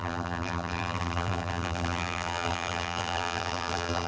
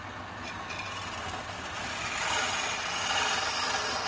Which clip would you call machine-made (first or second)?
first